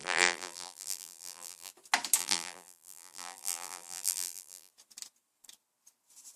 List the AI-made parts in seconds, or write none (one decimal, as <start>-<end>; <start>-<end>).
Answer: 0.0-1.7; 2.2-4.7